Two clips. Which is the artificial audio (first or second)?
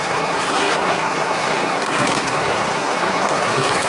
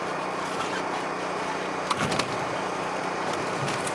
first